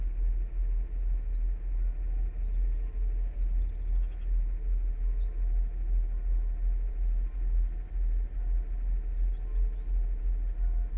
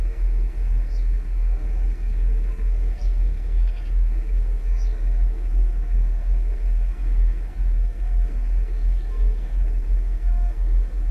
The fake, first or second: second